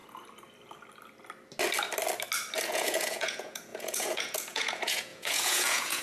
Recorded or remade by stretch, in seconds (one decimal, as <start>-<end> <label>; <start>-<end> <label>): 0.0-2.6 recorded; 2.6-6.0 remade